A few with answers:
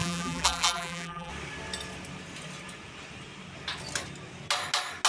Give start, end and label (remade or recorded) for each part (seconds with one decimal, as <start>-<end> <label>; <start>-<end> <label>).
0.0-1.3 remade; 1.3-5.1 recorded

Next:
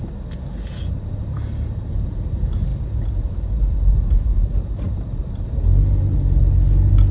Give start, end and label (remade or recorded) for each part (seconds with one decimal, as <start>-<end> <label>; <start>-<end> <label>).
0.0-2.7 recorded; 2.7-5.4 remade; 5.4-7.1 recorded

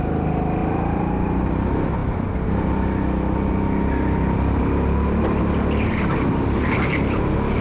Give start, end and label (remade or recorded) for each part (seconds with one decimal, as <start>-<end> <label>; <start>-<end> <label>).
0.0-7.6 recorded

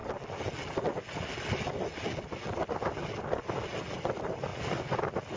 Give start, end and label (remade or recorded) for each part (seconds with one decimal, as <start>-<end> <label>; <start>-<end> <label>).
0.0-5.4 recorded

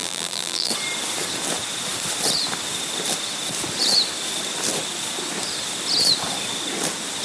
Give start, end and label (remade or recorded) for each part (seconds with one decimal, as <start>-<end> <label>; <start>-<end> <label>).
0.0-0.7 remade; 0.7-7.2 recorded